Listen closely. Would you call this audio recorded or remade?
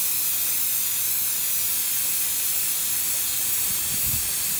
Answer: recorded